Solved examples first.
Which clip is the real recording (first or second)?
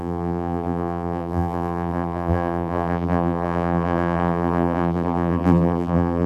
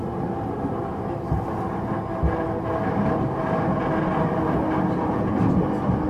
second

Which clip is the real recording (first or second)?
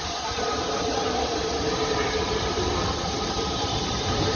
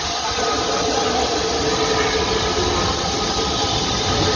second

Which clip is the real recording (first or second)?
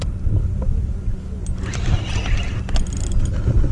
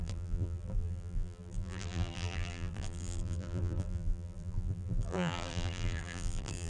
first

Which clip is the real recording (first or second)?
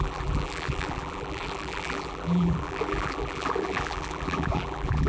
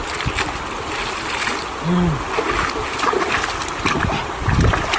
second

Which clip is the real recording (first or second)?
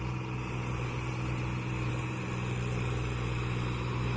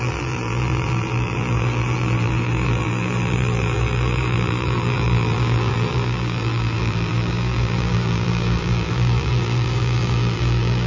first